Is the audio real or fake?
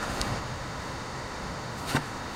fake